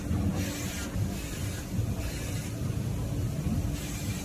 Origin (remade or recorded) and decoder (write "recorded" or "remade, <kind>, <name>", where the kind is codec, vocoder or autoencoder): recorded